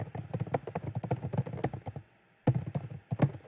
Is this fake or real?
real